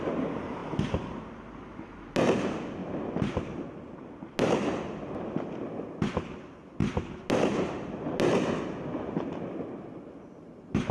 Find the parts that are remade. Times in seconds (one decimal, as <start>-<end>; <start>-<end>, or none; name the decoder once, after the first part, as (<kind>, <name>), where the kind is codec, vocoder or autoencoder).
none